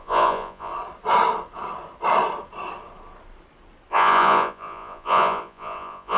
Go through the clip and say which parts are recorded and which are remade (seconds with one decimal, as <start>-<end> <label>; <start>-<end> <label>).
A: 0.0-0.7 remade; 0.7-3.9 recorded; 3.9-6.2 remade